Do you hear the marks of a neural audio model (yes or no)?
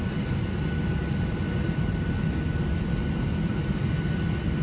no